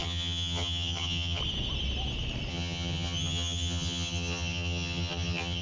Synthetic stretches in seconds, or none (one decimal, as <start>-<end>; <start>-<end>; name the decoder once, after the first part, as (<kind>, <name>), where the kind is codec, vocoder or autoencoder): 0.0-1.4 (vocoder, HiFi-GAN); 2.5-5.6